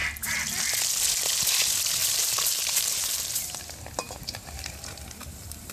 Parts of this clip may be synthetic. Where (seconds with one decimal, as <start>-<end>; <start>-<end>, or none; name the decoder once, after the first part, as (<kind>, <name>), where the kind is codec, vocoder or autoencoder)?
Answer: 2.0-5.7 (vocoder, BigVGAN v2)